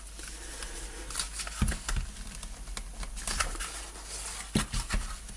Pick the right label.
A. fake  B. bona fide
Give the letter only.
B